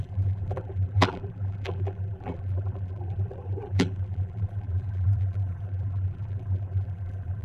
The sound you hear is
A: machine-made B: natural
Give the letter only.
A